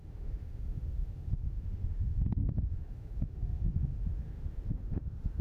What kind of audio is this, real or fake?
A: fake